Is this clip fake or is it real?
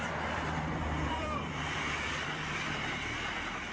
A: fake